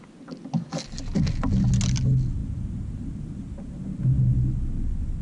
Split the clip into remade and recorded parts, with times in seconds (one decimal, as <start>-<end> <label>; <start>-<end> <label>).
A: 0.0-5.2 recorded